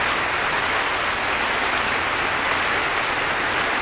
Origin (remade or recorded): recorded